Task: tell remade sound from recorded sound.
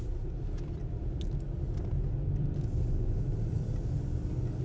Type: recorded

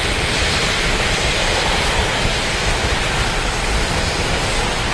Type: recorded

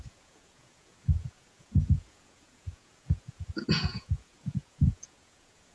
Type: remade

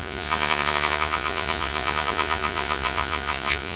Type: remade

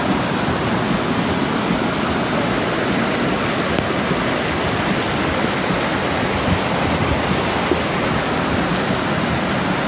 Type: recorded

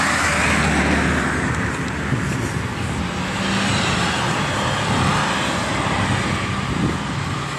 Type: recorded